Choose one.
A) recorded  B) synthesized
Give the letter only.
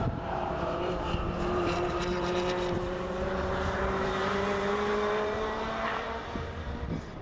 B